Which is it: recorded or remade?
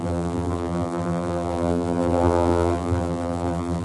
remade